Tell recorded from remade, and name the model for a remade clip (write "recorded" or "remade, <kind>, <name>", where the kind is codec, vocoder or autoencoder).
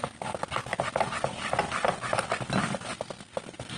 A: recorded